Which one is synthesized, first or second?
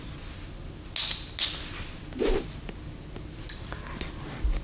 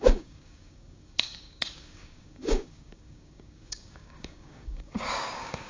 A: second